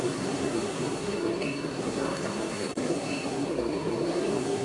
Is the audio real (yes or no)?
no